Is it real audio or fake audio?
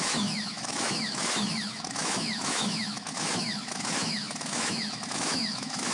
fake